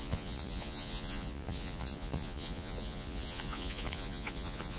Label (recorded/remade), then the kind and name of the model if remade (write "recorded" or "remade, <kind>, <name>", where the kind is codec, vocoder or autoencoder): remade, vocoder, Vocos